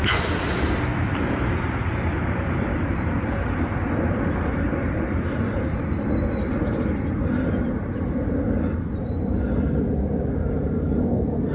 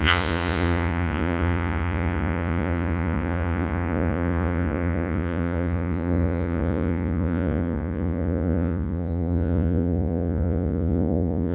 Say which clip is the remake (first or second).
second